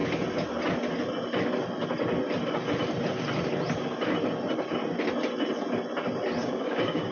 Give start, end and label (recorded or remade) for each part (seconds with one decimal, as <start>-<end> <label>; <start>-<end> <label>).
0.0-6.4 recorded; 6.4-7.1 remade